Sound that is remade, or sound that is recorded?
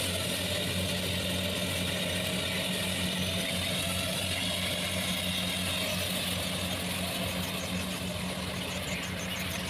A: recorded